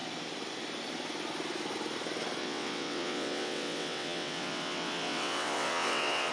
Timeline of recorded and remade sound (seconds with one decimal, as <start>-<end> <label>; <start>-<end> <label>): 0.0-2.4 recorded; 2.4-6.3 remade